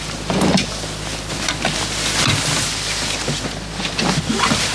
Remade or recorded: recorded